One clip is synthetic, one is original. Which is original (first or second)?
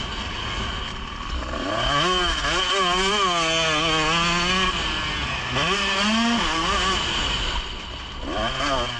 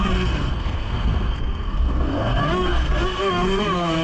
first